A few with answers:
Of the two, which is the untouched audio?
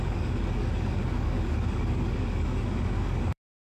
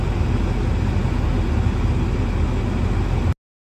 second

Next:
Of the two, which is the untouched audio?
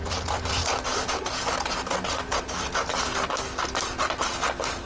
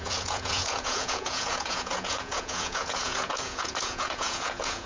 first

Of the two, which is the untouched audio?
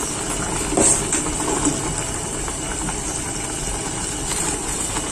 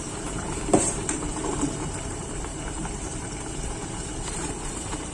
first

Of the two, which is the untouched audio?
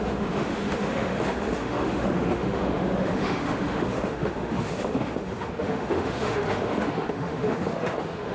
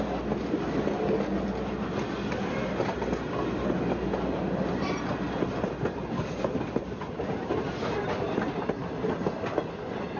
second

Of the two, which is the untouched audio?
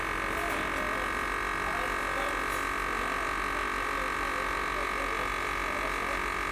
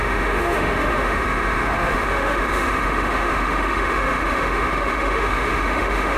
first